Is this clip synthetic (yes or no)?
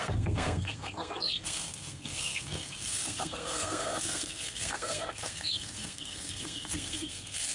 yes